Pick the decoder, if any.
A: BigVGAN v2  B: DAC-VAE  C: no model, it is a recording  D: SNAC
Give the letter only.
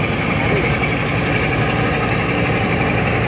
C